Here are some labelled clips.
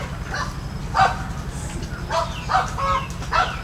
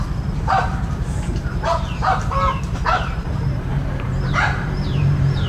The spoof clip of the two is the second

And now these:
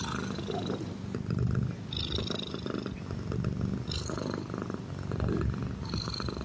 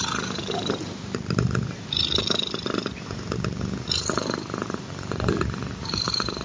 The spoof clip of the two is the second